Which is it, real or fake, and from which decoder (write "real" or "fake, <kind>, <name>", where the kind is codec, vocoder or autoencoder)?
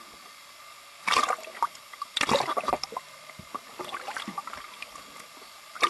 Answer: real